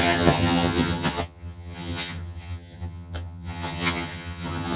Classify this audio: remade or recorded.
remade